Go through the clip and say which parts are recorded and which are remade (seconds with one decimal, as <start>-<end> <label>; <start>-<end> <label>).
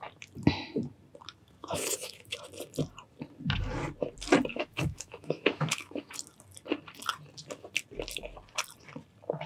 0.0-1.6 recorded; 1.6-2.4 remade; 2.4-4.5 recorded; 4.5-6.1 remade; 6.1-9.5 recorded